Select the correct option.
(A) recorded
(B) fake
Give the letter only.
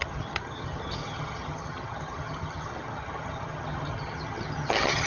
B